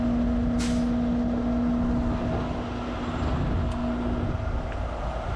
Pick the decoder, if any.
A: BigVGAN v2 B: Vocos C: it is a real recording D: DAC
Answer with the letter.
C